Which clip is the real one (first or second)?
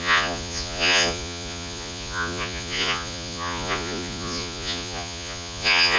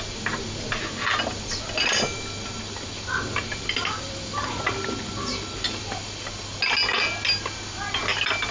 second